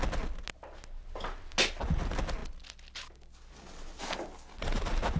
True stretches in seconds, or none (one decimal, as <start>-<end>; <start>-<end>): 0.0-5.2